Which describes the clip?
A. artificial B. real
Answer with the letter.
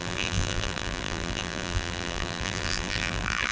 A